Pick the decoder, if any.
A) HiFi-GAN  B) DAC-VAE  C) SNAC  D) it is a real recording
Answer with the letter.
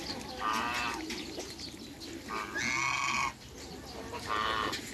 D